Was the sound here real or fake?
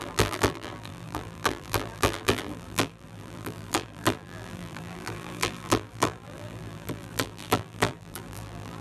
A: fake